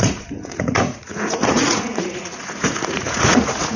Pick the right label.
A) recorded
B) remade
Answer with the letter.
B